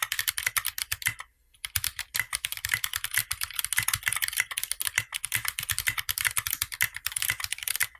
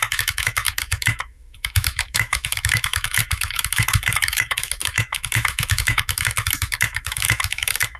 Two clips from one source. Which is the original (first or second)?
first